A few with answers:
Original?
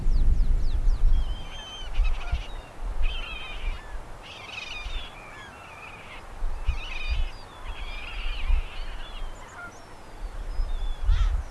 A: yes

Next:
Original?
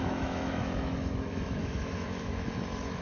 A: no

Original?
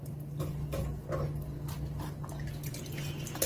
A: yes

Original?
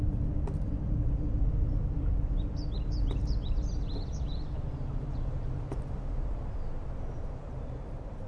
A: no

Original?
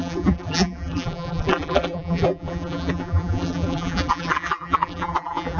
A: no